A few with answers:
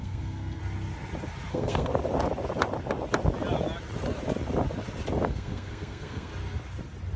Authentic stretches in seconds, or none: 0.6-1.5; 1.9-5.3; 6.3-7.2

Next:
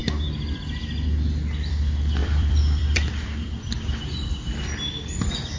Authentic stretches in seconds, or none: 0.0-2.2; 4.2-5.6

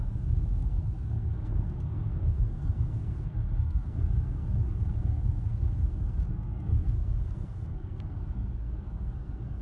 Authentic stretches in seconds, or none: none

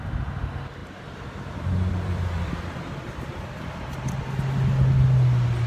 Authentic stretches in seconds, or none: 0.0-0.8; 4.2-5.7

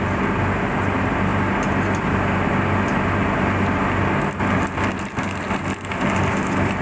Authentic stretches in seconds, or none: 0.0-6.8

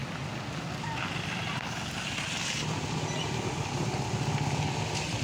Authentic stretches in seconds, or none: 0.0-5.2